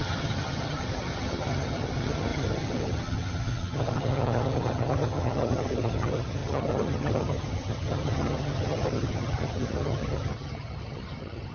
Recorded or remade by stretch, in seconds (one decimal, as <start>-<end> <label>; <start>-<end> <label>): 0.0-11.5 remade

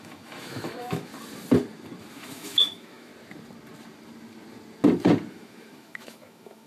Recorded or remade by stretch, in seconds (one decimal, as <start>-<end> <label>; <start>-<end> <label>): 0.0-1.1 remade; 1.1-2.1 recorded; 2.1-3.1 remade; 3.1-5.3 recorded; 5.3-6.7 remade

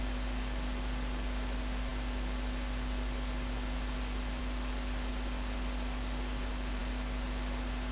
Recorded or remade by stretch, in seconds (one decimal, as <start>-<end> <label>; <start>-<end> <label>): 0.0-7.9 recorded

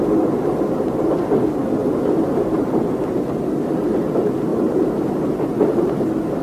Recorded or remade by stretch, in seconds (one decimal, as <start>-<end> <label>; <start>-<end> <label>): 0.0-1.8 recorded; 1.8-2.6 remade; 2.6-4.5 recorded; 4.5-6.0 remade; 6.0-6.4 recorded